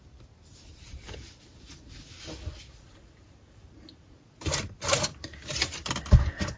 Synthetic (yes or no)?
no